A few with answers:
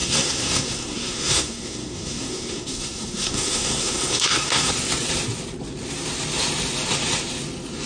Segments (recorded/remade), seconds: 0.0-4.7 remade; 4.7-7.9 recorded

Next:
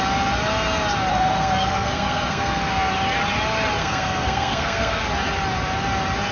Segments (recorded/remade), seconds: 0.0-1.1 recorded; 1.1-2.9 remade; 2.9-3.8 recorded; 3.8-5.0 remade; 5.0-6.3 recorded

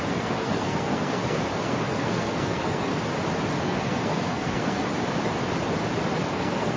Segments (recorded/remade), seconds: 0.0-2.9 remade; 2.9-3.6 recorded; 3.6-4.9 remade; 4.9-6.3 recorded; 6.3-6.8 remade

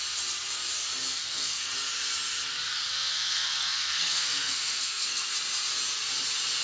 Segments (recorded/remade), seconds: 0.0-1.1 recorded; 1.1-1.7 remade; 1.7-2.9 recorded; 2.9-5.3 remade; 5.3-6.6 recorded